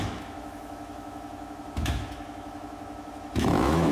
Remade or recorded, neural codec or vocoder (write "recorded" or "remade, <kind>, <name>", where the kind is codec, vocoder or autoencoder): remade, autoencoder, DAC-VAE